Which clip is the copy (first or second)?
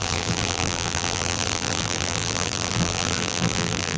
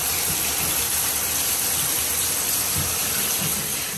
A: first